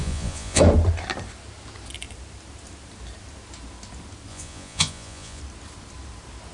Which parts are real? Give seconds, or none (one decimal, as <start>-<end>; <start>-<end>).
0.6-4.3; 5.4-6.5